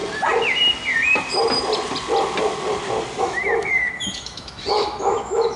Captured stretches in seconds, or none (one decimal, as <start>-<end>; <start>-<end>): 0.0-3.2